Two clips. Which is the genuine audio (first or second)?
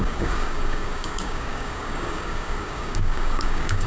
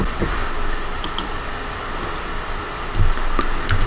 second